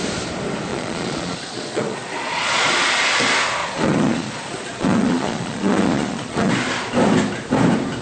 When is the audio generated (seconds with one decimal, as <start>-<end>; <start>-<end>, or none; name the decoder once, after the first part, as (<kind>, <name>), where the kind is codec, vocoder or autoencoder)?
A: 0.7-2.7 (vocoder, Vocos); 3.6-6.5